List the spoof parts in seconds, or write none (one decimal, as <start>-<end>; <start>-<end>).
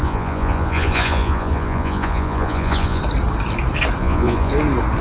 0.0-3.0; 4.0-4.5